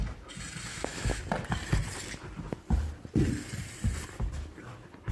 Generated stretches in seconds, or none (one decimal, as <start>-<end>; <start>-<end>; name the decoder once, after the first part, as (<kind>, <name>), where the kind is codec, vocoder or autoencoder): 0.7-1.2 (autoencoder, DAC-VAE)